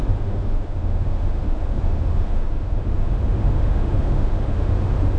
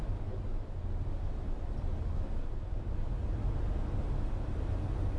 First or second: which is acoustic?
second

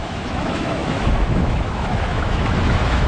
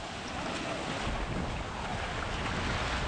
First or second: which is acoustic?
second